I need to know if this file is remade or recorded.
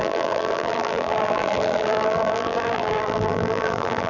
remade